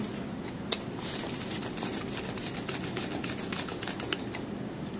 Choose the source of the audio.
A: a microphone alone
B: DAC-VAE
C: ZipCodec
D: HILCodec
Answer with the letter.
A